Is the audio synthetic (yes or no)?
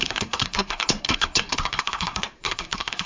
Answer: yes